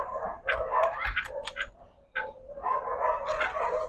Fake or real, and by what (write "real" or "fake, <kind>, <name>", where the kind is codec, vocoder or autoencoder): real